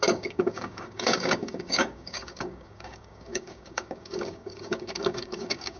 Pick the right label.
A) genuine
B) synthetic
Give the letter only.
B